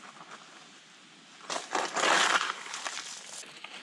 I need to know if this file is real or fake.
real